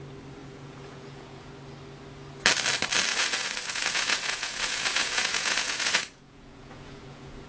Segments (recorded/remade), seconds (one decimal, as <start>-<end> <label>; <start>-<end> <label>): 0.0-0.4 recorded; 0.4-1.5 remade; 1.5-3.1 recorded; 3.1-7.5 remade